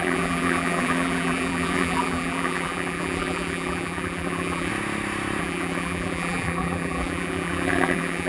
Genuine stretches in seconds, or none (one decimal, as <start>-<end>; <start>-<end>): 4.7-5.4